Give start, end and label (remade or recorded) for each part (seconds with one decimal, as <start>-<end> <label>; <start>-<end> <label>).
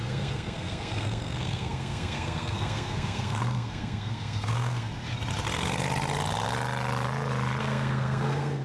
0.0-4.9 remade; 4.9-7.6 recorded; 7.6-8.6 remade